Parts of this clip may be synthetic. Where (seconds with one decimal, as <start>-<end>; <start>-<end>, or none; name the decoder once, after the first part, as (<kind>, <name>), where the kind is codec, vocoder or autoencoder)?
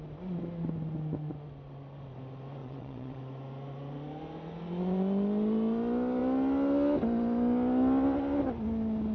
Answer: 2.6-3.2 (vocoder, WaveNeXt)